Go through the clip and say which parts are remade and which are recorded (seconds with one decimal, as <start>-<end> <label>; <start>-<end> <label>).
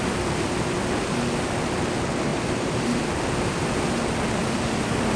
0.0-2.3 recorded; 2.3-3.0 remade; 3.0-4.4 recorded; 4.4-5.2 remade